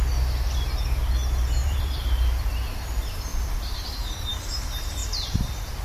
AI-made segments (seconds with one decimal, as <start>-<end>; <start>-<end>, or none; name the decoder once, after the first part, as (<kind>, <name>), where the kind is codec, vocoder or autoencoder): 1.6-2.4 (vocoder, BigVGAN v2); 3.3-3.9; 5.0-5.8

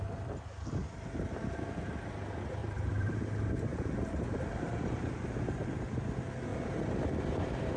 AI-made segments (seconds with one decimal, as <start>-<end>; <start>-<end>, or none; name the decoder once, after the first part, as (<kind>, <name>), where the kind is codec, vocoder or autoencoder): 2.6-3.2 (vocoder, BigVGAN v2); 3.7-5.7; 6.5-7.0

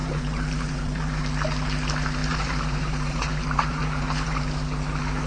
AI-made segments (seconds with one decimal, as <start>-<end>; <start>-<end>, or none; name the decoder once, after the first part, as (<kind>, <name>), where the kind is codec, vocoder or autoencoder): 0.0-1.2 (vocoder, BigVGAN v2); 2.2-4.4

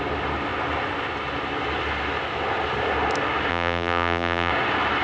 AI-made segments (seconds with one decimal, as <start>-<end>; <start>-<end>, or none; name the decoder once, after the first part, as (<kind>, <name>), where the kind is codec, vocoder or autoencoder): 3.5-4.5 (vocoder, BigVGAN v2)

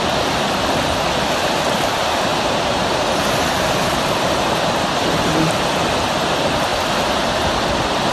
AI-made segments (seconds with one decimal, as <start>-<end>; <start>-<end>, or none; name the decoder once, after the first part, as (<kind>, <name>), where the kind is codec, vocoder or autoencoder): 2.3-5.6 (vocoder, BigVGAN v2)

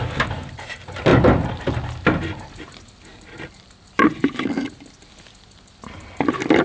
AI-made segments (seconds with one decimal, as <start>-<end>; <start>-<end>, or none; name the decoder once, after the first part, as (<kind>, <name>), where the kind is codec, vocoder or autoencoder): 0.0-1.1 (vocoder, BigVGAN v2); 1.7-6.6

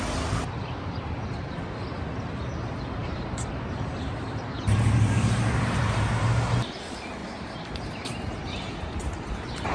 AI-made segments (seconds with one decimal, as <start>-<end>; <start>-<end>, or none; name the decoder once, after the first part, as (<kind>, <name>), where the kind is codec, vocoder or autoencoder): 3.0-5.8 (vocoder, BigVGAN v2); 7.2-9.7